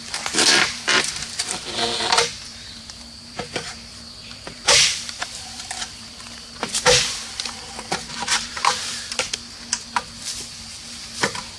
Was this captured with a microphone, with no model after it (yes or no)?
no